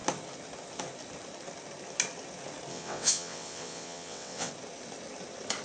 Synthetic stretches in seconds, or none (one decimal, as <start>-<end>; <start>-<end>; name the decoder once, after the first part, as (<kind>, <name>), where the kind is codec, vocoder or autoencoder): 2.7-4.5 (vocoder, WaveNeXt)